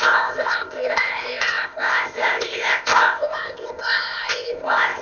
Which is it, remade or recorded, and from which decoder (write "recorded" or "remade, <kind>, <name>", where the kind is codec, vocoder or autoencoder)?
remade, codec, ZipCodec